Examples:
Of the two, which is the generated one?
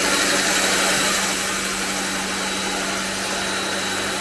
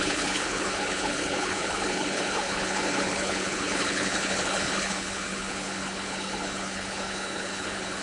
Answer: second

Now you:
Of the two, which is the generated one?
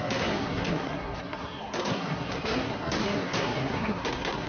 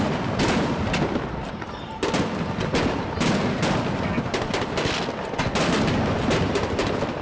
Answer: first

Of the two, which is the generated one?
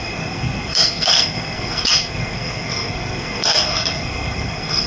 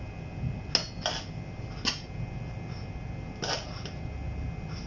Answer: first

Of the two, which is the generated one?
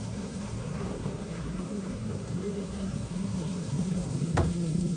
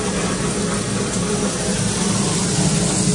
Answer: first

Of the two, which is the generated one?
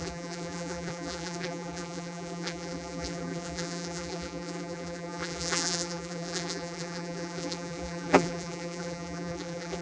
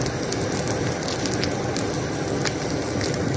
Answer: first